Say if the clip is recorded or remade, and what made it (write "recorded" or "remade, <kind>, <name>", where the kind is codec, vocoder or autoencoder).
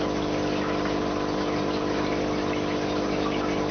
recorded